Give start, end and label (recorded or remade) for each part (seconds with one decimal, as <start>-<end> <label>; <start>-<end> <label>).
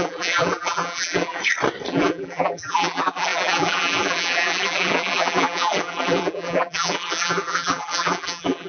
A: 0.0-1.4 remade; 1.4-1.9 recorded; 1.9-8.7 remade